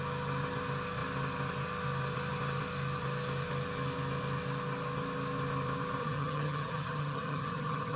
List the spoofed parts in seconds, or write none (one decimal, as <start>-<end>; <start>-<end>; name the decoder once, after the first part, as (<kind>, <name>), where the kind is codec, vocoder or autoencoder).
6.0-8.0 (vocoder, HiFi-GAN)

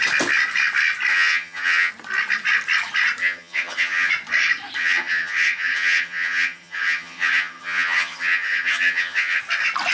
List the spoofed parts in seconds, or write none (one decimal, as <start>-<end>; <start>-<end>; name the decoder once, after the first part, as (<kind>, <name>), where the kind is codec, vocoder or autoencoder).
1.1-1.9 (vocoder, HiFi-GAN); 3.2-4.1; 4.8-9.4

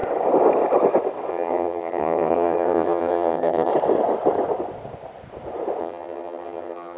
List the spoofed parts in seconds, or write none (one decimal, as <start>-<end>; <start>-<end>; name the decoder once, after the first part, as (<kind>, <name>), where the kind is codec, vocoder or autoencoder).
1.3-3.7 (vocoder, HiFi-GAN); 5.8-7.0

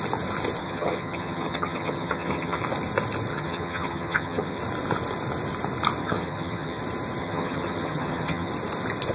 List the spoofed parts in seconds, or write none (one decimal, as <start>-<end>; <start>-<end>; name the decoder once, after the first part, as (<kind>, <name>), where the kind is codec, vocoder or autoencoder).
0.6-2.6 (vocoder, HiFi-GAN); 3.3-4.6; 6.0-6.8; 7.2-8.5

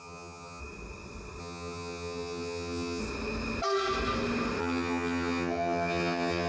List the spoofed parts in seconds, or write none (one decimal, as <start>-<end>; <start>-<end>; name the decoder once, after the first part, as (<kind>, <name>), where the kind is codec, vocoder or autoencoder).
0.0-0.6 (vocoder, HiFi-GAN); 1.4-3.0; 4.6-6.5

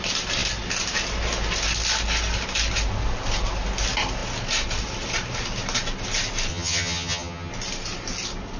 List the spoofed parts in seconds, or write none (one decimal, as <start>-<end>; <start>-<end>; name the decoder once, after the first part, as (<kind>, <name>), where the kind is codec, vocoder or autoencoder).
6.5-7.5 (vocoder, HiFi-GAN)